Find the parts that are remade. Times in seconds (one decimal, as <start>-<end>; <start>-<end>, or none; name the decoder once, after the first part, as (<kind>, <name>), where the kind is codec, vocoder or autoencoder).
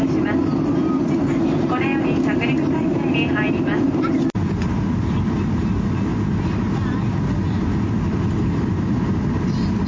none